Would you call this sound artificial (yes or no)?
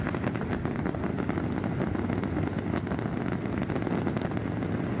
no